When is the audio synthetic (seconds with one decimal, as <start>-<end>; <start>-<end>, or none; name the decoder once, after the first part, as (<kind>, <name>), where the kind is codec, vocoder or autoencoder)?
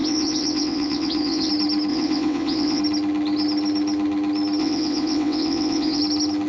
0.0-1.5 (vocoder, WaveNeXt); 1.9-2.8; 4.6-6.0